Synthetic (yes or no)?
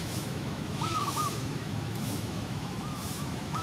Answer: yes